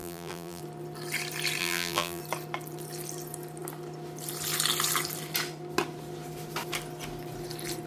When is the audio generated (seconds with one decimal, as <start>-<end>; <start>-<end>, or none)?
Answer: 0.0-0.6; 1.6-2.2